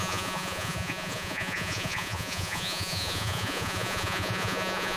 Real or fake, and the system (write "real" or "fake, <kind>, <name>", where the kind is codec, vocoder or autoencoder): fake, vocoder, Vocos